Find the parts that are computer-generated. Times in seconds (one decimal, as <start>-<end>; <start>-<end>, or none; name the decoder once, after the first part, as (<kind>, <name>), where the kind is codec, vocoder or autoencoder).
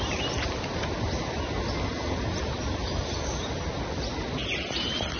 none